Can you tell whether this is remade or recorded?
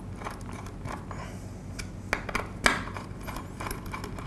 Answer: recorded